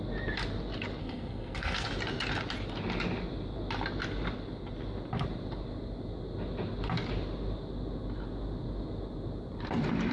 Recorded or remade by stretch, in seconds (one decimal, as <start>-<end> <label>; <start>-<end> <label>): 0.0-1.0 recorded; 1.0-1.9 remade; 1.9-10.1 recorded